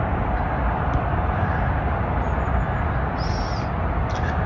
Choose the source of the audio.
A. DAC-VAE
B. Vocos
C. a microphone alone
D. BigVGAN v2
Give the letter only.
C